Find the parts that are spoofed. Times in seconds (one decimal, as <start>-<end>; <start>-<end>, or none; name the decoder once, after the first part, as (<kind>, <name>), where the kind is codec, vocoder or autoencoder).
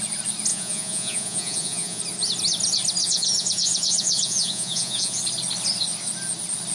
0.5-2.0 (vocoder, Vocos); 3.0-5.2